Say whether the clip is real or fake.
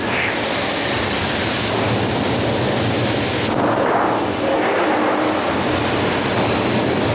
real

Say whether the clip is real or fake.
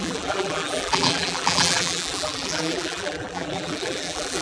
fake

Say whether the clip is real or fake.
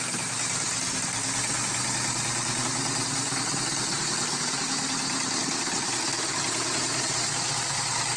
real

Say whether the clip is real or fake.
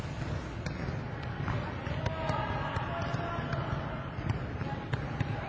real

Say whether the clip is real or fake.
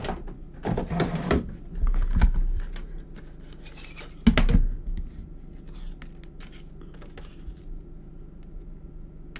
real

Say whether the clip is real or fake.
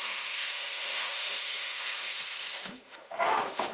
fake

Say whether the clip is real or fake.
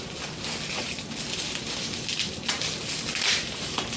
real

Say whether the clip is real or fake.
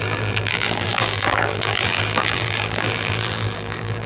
fake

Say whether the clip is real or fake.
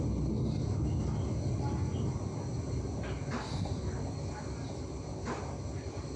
real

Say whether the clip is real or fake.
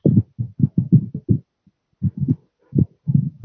real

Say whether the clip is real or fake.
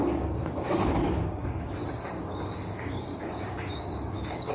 fake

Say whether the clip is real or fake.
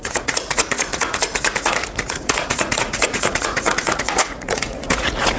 fake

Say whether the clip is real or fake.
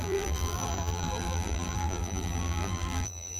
fake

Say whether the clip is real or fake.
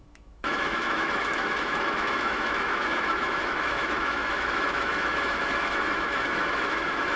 fake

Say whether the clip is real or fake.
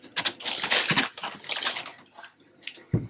real